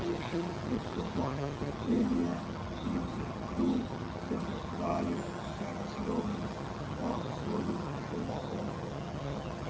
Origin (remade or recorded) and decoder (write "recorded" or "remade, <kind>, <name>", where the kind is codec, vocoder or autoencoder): remade, vocoder, HiFi-GAN